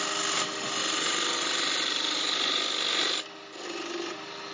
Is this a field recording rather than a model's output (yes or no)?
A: yes